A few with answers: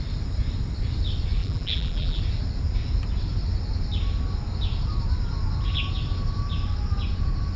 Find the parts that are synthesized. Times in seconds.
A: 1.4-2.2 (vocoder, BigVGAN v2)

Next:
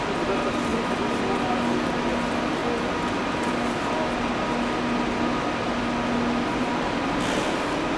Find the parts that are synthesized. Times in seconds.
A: none

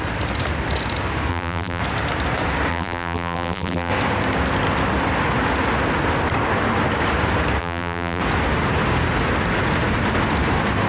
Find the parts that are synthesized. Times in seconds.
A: 1.3-1.8 (vocoder, BigVGAN v2); 2.7-3.9; 7.6-8.2

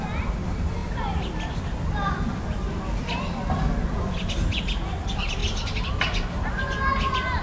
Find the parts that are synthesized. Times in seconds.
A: none